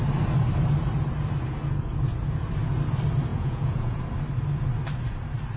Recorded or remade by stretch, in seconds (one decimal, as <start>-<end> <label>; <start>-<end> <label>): 0.0-3.3 recorded; 3.3-4.0 remade; 4.0-5.6 recorded